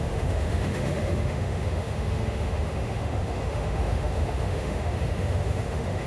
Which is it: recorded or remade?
remade